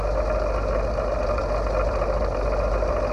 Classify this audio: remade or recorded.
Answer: recorded